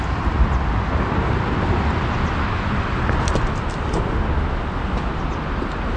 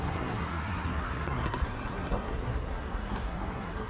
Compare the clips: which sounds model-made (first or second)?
second